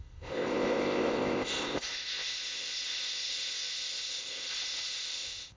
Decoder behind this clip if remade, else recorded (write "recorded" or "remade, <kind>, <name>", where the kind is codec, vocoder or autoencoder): remade, codec, ZipCodec